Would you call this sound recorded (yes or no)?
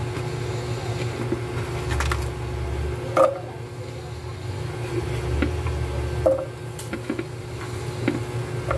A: yes